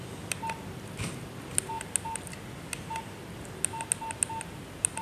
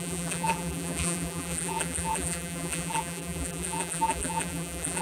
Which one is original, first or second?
first